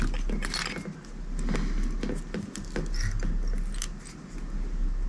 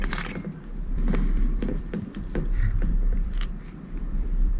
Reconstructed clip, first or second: second